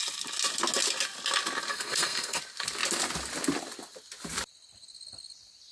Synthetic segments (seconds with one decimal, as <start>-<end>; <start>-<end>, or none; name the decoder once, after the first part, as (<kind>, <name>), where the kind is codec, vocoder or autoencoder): 1.7-2.4 (codec, SNAC)